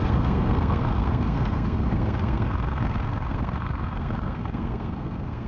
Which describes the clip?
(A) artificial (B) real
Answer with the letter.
A